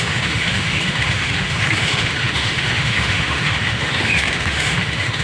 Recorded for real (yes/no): no